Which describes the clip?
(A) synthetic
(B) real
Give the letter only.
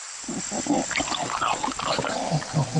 B